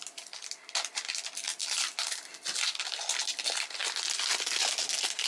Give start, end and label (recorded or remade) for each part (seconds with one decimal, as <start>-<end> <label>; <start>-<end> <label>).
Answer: 0.0-5.3 recorded